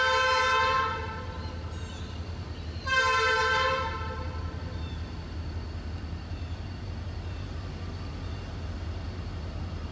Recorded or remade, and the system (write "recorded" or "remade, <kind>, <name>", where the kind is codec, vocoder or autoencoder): recorded